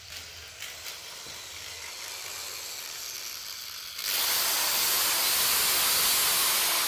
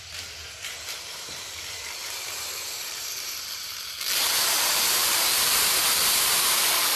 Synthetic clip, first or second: second